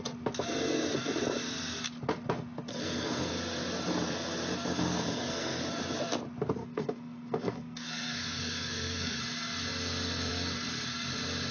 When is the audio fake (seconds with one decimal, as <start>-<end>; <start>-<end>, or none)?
2.7-3.3; 4.7-5.6; 6.6-9.2